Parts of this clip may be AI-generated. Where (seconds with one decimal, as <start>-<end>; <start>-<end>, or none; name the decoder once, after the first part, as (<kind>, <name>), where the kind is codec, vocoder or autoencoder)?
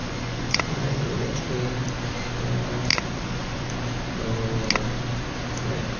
0.0-1.4 (vocoder, Vocos); 2.9-3.7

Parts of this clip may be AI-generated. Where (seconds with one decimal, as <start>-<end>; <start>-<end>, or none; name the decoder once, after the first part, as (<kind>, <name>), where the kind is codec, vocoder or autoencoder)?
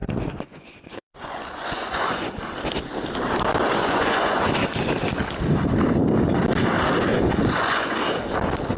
0.0-2.3 (vocoder, Vocos); 3.8-4.5; 7.1-8.0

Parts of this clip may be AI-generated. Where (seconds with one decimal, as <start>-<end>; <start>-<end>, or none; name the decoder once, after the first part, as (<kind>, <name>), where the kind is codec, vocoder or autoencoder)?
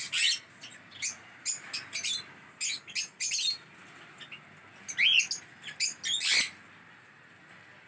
none